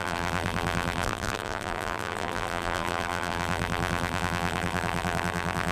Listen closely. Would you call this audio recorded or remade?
remade